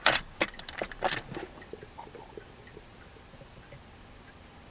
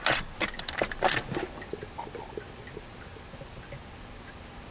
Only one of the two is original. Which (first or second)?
second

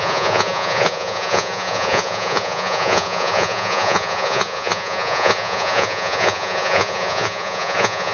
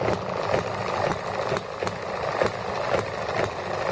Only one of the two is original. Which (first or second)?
second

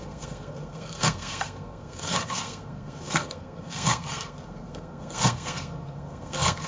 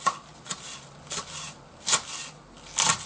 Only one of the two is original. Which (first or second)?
second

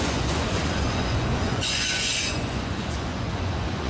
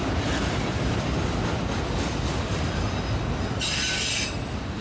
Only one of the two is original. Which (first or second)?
second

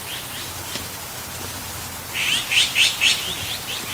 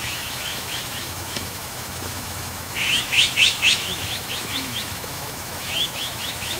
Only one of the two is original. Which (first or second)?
first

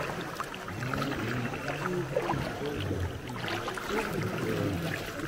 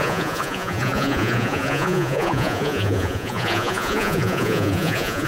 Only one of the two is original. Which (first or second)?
first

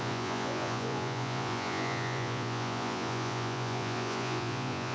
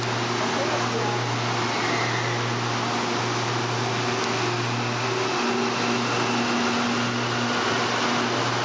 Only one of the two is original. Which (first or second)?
second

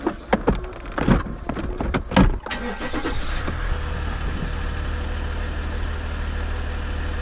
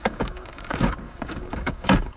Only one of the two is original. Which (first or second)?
first